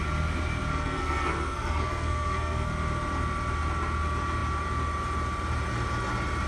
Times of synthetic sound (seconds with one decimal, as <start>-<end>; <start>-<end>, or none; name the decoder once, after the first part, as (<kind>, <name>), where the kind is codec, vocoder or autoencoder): 0.7-2.7 (codec, SNAC)

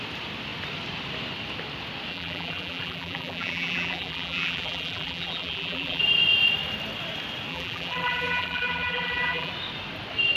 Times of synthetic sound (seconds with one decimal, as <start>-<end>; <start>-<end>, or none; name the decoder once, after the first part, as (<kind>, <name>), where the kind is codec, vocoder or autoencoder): 2.1-6.0 (vocoder, BigVGAN v2); 7.5-9.5

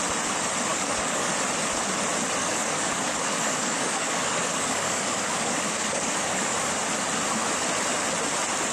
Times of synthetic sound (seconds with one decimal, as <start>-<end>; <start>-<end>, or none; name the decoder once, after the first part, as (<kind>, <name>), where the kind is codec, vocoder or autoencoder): 0.7-1.3 (codec, DAC); 2.4-6.7